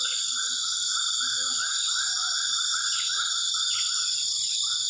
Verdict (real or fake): fake